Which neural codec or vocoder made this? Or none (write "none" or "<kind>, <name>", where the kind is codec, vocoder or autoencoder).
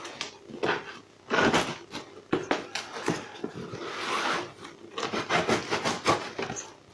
none